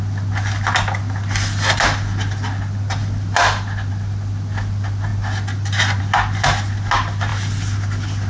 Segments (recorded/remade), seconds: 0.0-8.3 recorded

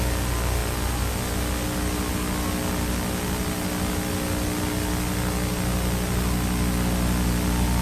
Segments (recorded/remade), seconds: 0.0-7.8 recorded

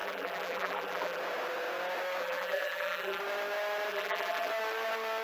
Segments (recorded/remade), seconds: 0.0-1.2 remade; 1.2-2.2 recorded; 2.2-3.2 remade; 3.2-3.9 recorded; 3.9-4.5 remade; 4.5-5.2 recorded

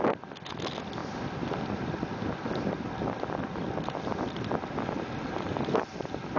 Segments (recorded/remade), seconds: 0.0-6.4 recorded

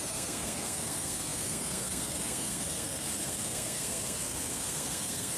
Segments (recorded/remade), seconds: 0.0-5.4 remade

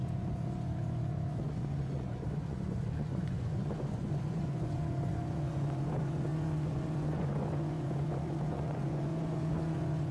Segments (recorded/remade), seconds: 0.0-10.1 remade